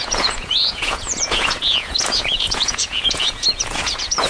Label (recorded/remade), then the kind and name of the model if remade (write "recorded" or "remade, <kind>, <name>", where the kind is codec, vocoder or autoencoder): remade, vocoder, Vocos